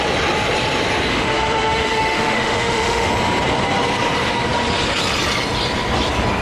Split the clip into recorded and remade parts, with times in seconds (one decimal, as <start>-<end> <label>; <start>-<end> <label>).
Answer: 0.0-1.1 recorded; 1.1-3.1 remade; 3.1-6.4 recorded